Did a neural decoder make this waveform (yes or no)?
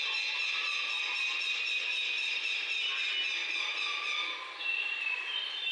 no